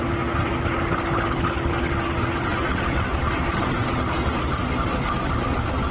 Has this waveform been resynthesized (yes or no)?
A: no